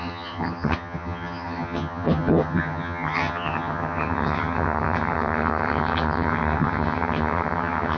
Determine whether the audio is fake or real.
fake